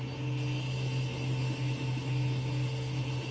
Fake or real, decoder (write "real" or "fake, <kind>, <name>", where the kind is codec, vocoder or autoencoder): real